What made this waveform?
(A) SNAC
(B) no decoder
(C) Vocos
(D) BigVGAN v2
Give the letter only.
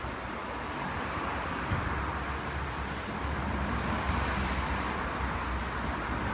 B